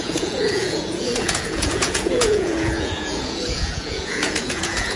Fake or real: fake